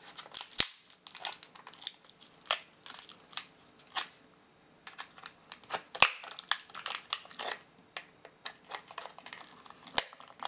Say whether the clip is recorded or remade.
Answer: recorded